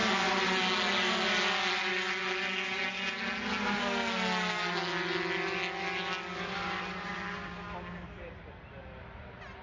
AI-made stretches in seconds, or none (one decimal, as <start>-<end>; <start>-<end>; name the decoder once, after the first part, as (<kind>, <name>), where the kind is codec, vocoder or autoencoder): 6.3-7.1 (vocoder, BigVGAN v2)